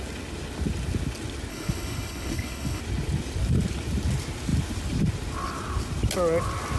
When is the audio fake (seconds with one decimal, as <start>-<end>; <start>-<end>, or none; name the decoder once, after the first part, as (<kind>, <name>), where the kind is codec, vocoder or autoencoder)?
1.5-2.8 (codec, HILCodec)